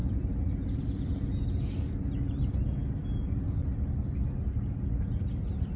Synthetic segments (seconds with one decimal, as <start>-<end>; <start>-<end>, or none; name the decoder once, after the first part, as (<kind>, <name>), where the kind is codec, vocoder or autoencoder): 0.0-1.1 (vocoder, BigVGAN v2)